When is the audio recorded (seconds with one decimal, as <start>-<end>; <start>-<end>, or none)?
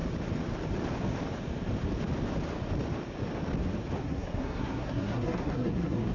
0.0-4.0